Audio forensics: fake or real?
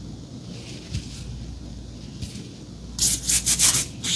real